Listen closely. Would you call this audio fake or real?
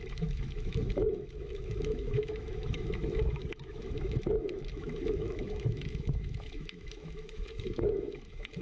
fake